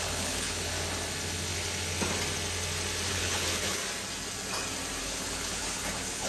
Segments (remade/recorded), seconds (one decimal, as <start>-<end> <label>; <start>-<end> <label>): 0.0-0.7 remade; 0.7-3.1 recorded; 3.1-3.8 remade; 3.8-5.0 recorded; 5.0-6.3 remade